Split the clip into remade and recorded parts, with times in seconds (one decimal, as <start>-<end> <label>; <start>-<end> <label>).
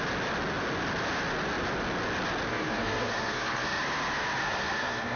0.0-2.5 recorded; 2.5-3.8 remade; 3.8-4.4 recorded; 4.4-5.2 remade